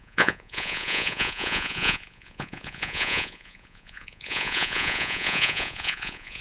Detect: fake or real fake